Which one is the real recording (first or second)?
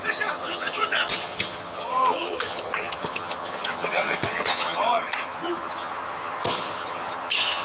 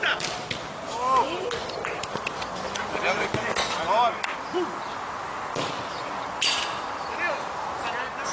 second